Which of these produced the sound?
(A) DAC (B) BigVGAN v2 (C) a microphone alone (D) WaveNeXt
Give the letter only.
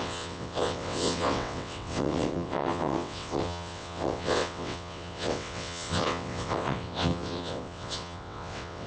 D